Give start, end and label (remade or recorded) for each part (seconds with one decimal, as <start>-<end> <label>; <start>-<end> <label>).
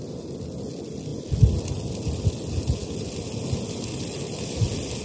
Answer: 0.0-5.0 recorded